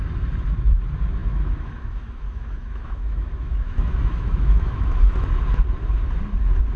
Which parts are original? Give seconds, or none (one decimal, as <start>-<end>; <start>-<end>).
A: 0.0-1.2; 5.3-6.8